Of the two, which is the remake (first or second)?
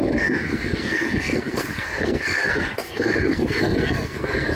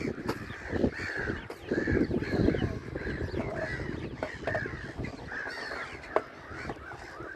first